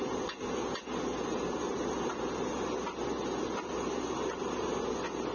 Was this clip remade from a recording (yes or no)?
no